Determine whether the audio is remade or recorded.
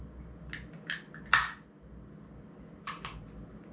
recorded